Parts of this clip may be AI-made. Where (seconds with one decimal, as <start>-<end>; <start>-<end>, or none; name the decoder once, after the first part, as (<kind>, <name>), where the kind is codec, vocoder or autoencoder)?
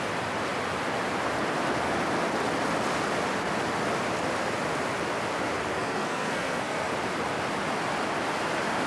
5.7-6.9 (codec, SNAC)